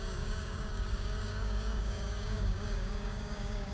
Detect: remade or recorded remade